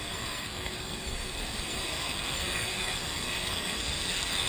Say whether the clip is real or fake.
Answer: fake